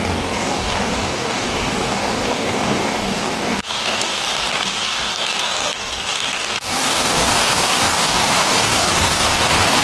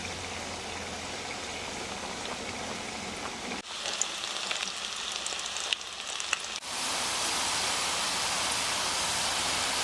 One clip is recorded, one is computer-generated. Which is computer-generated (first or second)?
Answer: first